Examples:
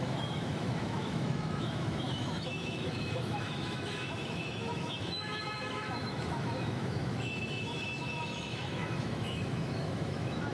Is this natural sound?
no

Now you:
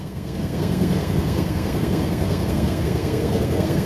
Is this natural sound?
no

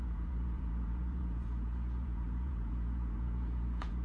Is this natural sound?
no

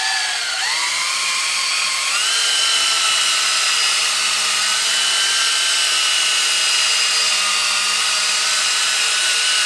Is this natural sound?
yes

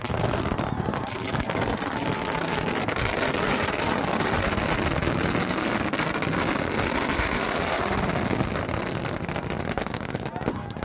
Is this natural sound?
yes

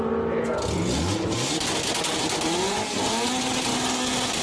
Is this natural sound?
yes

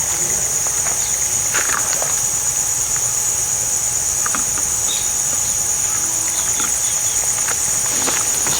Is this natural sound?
yes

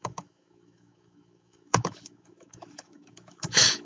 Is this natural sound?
no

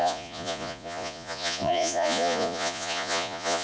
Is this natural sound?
no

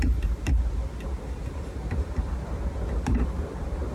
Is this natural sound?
no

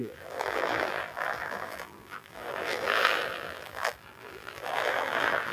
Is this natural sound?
no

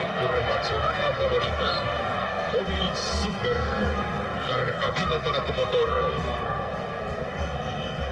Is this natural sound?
no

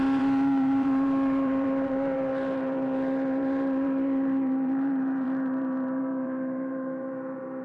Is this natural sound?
no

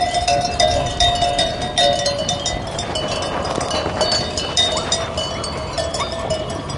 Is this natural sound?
no